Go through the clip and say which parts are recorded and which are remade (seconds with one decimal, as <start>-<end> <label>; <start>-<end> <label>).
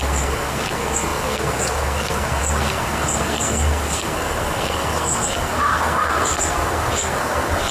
0.0-7.7 remade